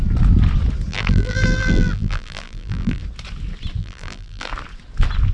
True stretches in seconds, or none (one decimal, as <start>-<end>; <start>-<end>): 0.0-0.9; 3.0-3.8; 4.5-5.3